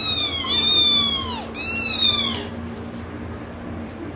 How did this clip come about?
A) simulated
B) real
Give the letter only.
B